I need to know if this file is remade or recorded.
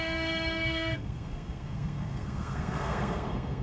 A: remade